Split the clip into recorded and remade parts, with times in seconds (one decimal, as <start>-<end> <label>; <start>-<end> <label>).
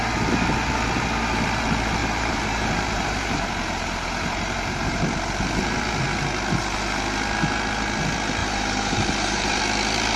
0.0-2.0 recorded; 2.0-5.0 remade; 5.0-8.4 recorded; 8.4-9.6 remade; 9.6-10.2 recorded